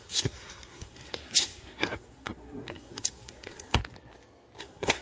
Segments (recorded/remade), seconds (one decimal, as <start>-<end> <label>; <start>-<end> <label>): 0.0-3.8 remade; 3.8-4.6 recorded; 4.6-5.0 remade